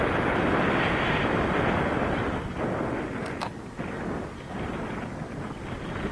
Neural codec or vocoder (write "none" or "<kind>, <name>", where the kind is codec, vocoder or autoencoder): none